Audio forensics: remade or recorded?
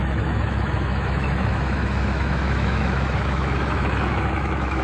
remade